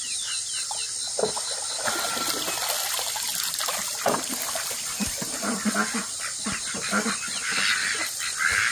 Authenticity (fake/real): real